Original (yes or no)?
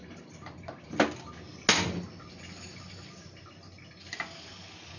yes